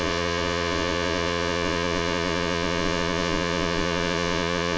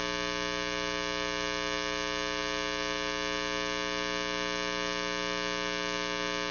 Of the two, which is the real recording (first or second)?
second